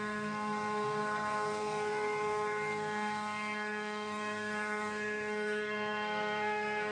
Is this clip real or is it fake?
fake